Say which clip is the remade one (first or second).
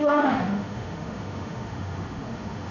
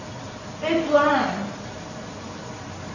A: first